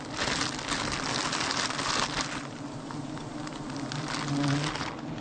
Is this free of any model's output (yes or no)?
yes